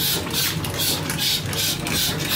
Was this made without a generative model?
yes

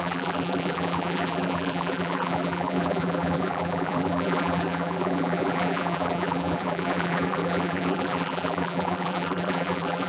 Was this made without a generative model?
no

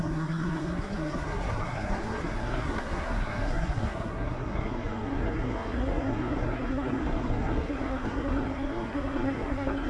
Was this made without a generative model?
no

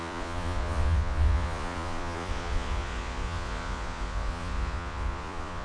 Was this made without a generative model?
no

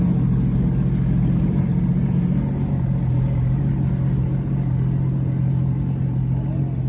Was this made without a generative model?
yes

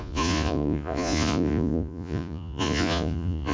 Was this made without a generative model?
no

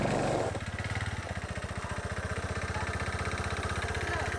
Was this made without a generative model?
yes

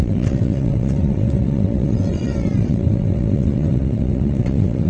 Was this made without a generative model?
no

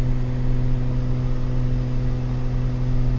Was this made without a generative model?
yes